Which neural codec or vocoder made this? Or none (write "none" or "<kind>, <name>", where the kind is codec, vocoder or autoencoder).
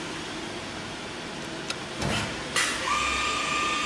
none